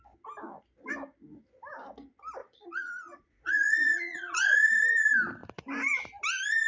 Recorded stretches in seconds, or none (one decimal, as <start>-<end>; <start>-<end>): 0.0-2.4; 4.7-6.7